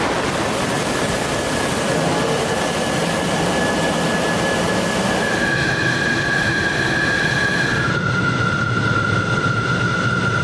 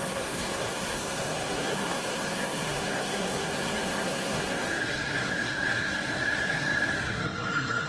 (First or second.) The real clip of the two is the first